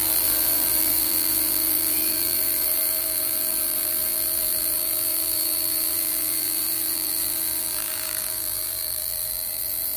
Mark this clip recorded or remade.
remade